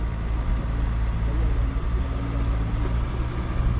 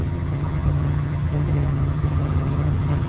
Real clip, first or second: first